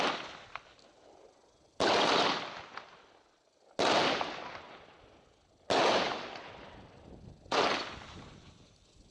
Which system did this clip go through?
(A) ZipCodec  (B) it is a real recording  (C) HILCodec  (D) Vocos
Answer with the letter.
B